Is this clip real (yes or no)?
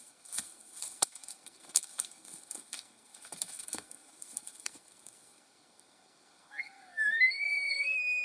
no